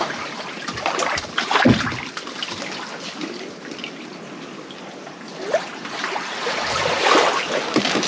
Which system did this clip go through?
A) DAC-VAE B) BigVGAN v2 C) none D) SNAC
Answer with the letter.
C